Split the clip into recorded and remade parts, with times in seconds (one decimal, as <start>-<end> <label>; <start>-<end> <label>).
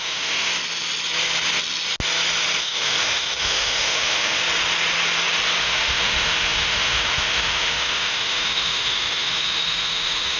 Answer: 0.0-0.5 remade; 0.5-2.6 recorded; 2.6-4.4 remade; 4.4-5.6 recorded; 5.6-10.4 remade